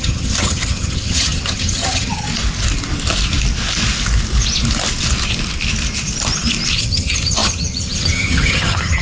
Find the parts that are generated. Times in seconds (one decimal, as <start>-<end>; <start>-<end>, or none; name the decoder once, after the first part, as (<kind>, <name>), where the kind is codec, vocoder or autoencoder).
0.0-2.3 (vocoder, HiFi-GAN); 6.8-9.0